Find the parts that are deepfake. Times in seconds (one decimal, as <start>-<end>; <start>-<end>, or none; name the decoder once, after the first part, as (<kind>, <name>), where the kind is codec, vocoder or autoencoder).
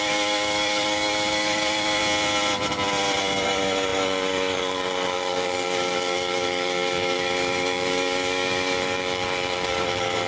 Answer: 0.0-2.0 (codec, DAC); 3.2-10.3